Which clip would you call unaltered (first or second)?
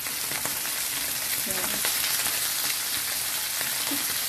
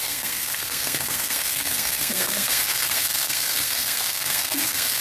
first